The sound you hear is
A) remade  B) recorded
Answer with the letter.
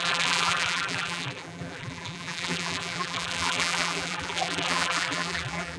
A